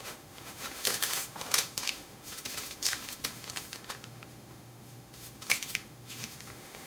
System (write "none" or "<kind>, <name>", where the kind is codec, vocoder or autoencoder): autoencoder, DAC-VAE